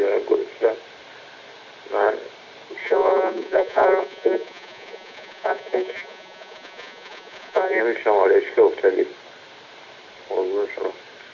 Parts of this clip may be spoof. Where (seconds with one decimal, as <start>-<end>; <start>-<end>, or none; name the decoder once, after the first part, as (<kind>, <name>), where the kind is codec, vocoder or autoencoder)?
2.8-7.8 (vocoder, Vocos)